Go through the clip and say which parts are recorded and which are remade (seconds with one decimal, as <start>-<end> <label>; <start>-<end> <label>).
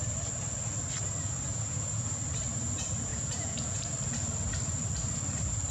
0.0-1.5 recorded; 1.5-2.2 remade; 2.2-3.1 recorded; 3.1-3.8 remade; 3.8-5.7 recorded